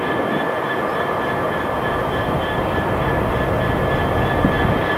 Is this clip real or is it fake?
real